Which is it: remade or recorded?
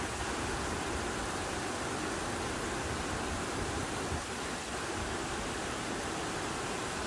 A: recorded